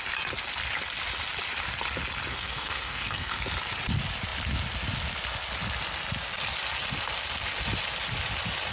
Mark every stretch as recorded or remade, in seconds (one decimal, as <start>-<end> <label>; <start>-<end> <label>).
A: 0.0-2.3 recorded; 2.3-3.4 remade; 3.4-8.7 recorded